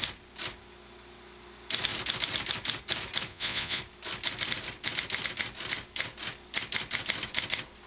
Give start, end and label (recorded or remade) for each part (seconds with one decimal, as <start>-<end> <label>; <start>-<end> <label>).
0.0-3.3 recorded; 3.3-3.8 remade; 3.8-7.9 recorded